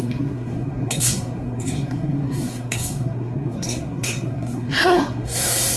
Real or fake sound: fake